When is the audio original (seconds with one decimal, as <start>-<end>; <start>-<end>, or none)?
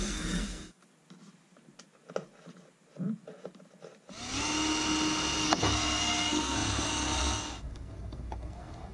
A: 0.8-5.4